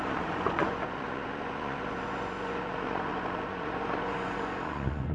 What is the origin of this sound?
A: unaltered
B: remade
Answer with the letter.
B